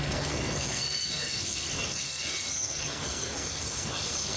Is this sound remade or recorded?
remade